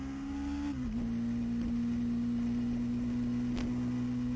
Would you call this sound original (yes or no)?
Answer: yes